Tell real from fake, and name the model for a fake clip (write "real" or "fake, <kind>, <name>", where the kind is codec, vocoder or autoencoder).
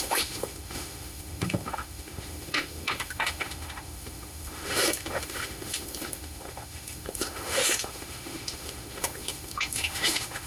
fake, autoencoder, DAC-VAE